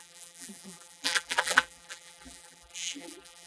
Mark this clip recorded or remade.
remade